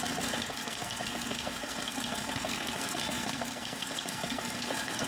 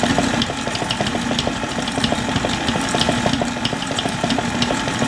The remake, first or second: first